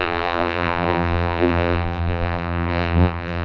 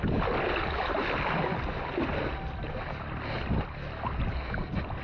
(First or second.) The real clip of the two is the second